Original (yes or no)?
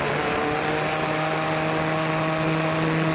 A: yes